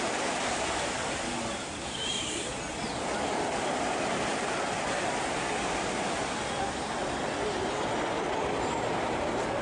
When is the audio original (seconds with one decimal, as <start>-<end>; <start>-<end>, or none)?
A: 0.0-9.6